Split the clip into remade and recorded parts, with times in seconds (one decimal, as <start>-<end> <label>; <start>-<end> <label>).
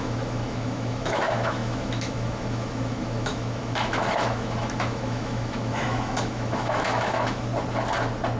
0.0-7.5 remade; 7.5-8.4 recorded